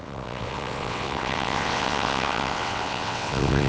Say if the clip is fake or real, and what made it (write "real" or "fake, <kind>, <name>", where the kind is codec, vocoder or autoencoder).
fake, vocoder, WaveNeXt